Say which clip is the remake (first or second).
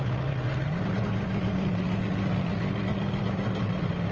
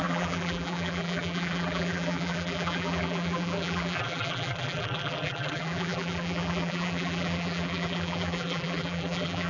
second